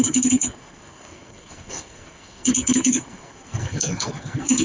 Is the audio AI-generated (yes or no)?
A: yes